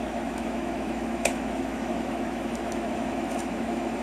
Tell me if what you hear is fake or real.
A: fake